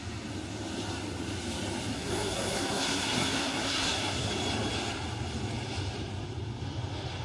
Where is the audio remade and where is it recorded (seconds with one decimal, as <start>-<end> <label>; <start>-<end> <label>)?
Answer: 0.0-1.9 recorded; 1.9-4.3 remade; 4.3-7.2 recorded